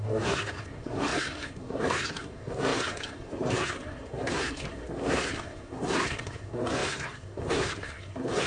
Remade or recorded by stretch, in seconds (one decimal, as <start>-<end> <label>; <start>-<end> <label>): 0.0-8.5 remade